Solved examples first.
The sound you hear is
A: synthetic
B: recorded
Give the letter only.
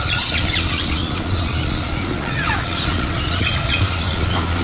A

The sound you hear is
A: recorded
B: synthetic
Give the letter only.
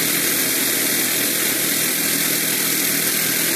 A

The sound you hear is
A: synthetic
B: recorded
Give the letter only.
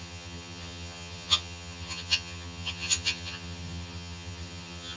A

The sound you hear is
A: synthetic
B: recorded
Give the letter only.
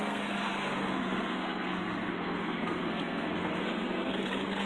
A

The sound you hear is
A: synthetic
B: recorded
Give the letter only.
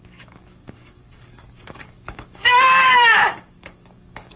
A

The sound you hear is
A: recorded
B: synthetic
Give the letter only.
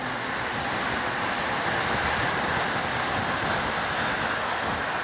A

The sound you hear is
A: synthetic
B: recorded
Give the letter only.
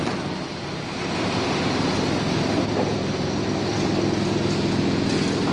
B